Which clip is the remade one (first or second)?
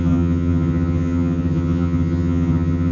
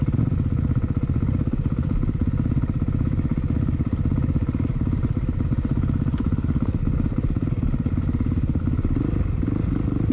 first